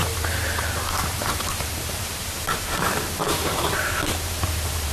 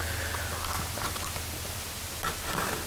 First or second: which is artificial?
first